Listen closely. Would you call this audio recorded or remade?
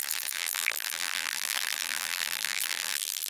remade